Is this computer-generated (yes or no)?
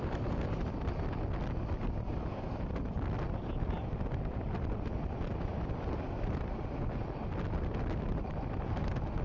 no